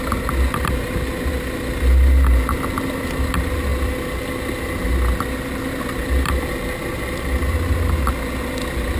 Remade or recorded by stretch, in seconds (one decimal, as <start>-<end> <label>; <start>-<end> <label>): 0.0-9.0 recorded